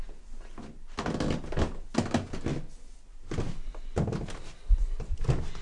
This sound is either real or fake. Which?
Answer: real